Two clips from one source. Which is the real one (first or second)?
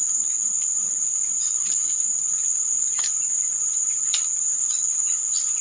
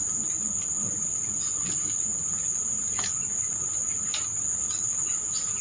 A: second